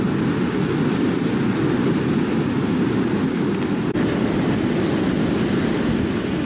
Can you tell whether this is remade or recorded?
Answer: recorded